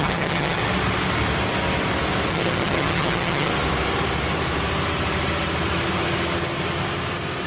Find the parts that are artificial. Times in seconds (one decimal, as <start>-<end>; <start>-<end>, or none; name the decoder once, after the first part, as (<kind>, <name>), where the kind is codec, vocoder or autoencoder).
0.0-0.6 (vocoder, HiFi-GAN); 2.3-3.5

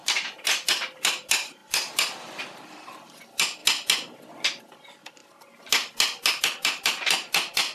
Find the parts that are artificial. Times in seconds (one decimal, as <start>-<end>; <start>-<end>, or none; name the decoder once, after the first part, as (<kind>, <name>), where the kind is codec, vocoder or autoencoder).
0.0-3.6 (vocoder, BigVGAN v2); 4.6-5.2; 6.4-7.7

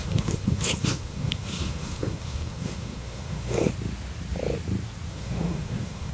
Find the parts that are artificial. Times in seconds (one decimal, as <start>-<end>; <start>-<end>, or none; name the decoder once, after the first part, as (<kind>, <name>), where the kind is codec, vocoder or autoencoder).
0.0-3.7 (codec, SNAC); 5.1-6.1

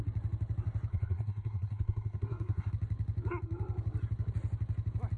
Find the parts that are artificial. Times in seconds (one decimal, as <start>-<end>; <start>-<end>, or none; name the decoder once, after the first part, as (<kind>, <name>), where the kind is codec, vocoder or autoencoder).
0.9-2.7 (codec, SNAC)

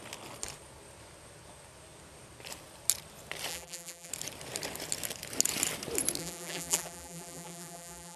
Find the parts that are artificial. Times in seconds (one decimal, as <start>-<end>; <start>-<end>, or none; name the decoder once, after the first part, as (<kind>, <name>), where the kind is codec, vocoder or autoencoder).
3.5-4.1 (vocoder, BigVGAN v2); 6.2-8.2

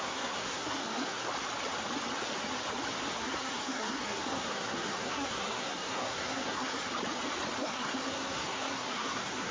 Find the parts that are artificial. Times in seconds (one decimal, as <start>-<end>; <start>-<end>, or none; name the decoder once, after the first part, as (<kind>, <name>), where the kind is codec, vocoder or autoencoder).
0.0-1.2 (codec, SNAC); 3.1-6.9; 7.6-9.5